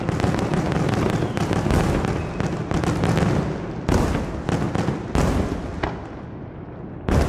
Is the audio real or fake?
real